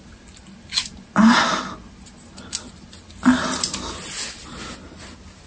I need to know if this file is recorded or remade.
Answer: recorded